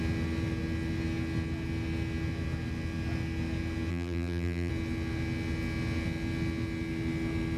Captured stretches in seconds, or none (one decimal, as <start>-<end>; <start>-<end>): 0.0-3.9; 4.7-7.6